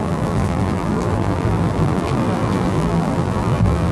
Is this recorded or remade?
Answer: remade